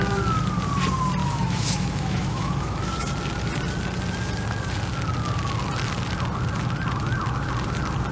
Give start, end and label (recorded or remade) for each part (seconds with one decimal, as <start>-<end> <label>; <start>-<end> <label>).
0.0-1.2 recorded; 1.2-2.8 remade; 2.8-8.1 recorded